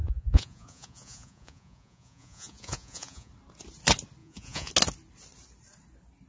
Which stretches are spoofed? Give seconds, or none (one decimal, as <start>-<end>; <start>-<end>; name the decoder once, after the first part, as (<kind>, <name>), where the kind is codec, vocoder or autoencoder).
0.0-3.3 (vocoder, Vocos); 4.2-4.7

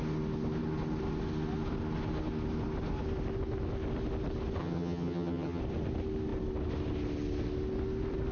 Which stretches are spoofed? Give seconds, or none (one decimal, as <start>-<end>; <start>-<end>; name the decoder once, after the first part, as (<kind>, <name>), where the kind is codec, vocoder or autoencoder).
4.6-5.6 (vocoder, HiFi-GAN)

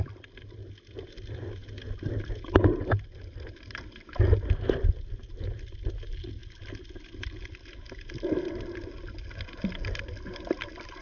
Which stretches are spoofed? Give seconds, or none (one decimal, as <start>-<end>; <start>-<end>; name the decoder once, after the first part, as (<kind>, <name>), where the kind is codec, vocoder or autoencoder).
none

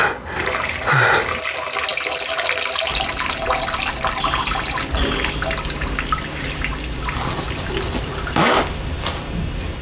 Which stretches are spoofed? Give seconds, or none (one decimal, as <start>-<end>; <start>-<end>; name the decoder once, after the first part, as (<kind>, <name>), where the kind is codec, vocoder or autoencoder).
none

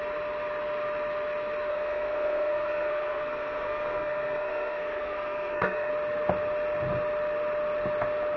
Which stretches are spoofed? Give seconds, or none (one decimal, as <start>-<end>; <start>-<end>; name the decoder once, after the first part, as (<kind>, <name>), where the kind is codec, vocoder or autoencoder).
1.7-5.9 (codec, SNAC)